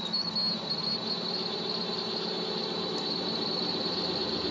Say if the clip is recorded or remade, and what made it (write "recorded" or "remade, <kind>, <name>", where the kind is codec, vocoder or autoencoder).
recorded